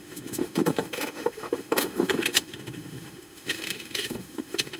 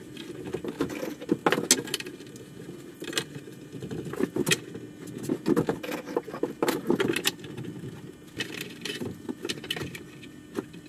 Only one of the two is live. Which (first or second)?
second